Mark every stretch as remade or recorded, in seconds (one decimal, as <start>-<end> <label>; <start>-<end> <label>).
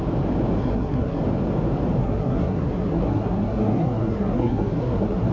0.0-0.6 recorded; 0.6-1.2 remade; 1.2-2.0 recorded; 2.0-5.3 remade